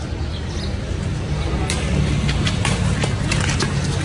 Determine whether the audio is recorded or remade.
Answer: recorded